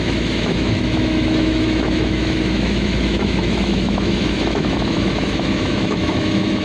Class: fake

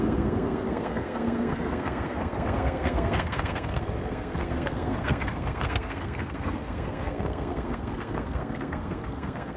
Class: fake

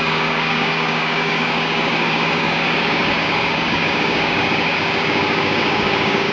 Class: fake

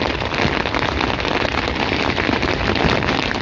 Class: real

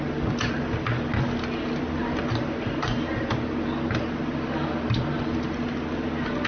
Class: real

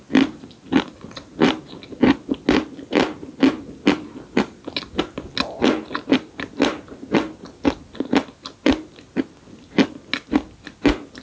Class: real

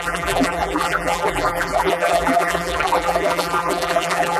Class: fake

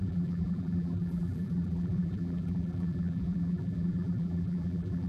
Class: fake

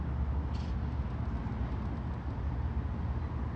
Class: real